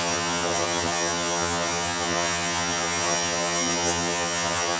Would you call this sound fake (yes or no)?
yes